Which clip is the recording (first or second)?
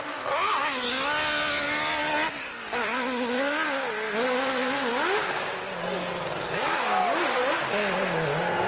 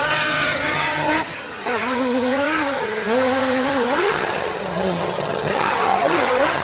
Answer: first